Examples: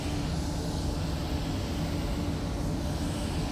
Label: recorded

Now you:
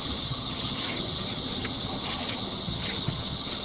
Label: remade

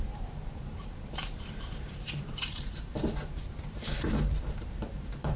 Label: remade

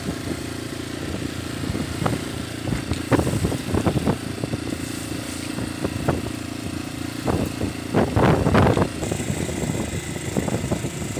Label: recorded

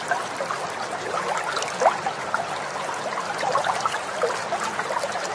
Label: recorded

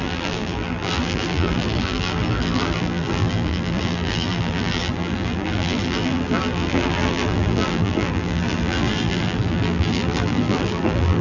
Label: remade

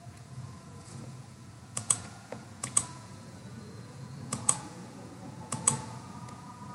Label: remade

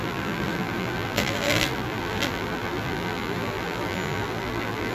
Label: remade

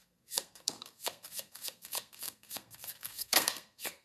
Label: remade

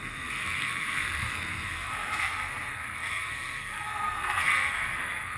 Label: remade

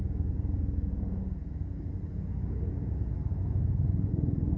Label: remade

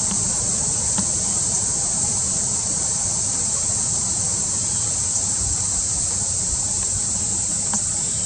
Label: remade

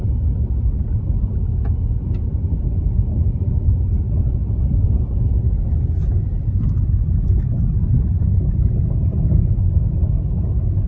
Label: recorded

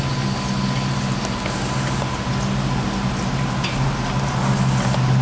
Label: recorded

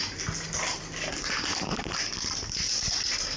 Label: recorded